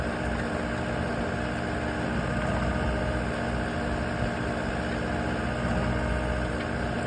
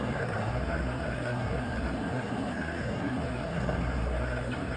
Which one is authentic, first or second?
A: first